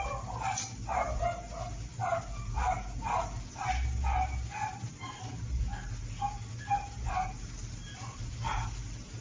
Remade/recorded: recorded